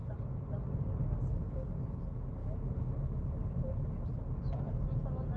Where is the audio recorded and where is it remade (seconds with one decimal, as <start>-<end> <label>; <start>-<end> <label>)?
0.0-5.4 recorded